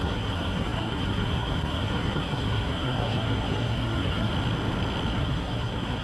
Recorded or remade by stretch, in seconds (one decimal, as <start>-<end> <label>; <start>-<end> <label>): 0.0-4.3 remade; 4.3-5.1 recorded; 5.1-6.0 remade